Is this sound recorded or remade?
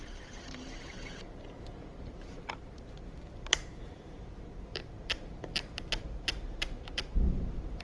remade